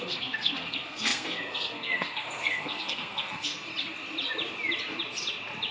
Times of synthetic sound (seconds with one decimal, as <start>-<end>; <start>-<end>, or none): 0.0-3.7

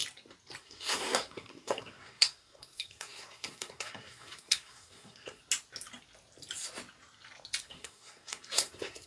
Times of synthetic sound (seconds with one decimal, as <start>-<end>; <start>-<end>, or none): 0.6-5.4; 7.6-9.1

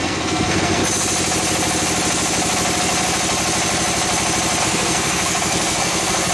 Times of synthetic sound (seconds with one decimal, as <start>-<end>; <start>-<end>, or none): 0.0-0.8; 4.6-6.3

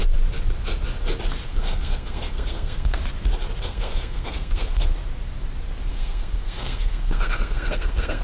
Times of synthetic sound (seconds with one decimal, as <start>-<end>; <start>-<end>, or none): 1.5-3.0; 3.6-4.9; 5.9-8.2

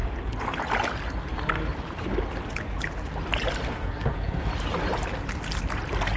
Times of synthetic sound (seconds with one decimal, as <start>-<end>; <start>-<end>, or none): 3.7-4.5

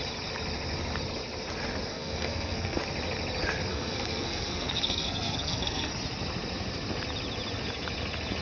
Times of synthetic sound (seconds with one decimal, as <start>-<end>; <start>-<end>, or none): 1.9-2.8; 3.7-5.9